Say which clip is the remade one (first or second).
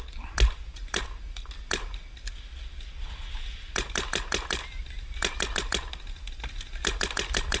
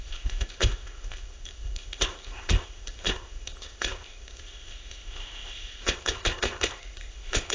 second